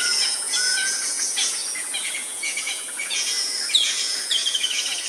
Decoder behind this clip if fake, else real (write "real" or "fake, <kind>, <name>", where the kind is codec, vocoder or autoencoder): fake, vocoder, Vocos